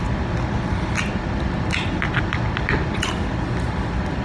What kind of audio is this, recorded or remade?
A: recorded